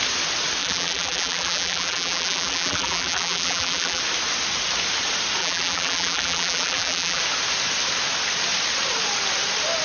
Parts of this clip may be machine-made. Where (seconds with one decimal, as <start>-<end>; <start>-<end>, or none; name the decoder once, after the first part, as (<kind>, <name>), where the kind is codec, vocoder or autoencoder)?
0.6-4.0 (vocoder, BigVGAN v2); 5.4-7.2